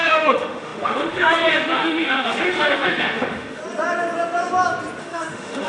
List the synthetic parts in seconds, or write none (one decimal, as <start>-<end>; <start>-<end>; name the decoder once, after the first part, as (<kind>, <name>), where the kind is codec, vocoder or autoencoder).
0.0-3.6 (autoencoder, DAC-VAE); 5.0-5.7